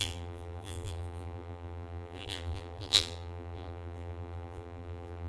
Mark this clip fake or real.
fake